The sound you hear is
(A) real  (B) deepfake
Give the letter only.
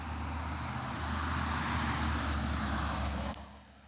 A